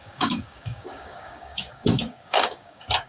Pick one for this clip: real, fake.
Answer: fake